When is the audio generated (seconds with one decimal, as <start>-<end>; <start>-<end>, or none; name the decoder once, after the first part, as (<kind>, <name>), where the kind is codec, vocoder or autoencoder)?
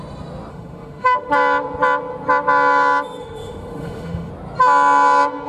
0.5-1.3 (autoencoder, DAC-VAE); 3.2-4.3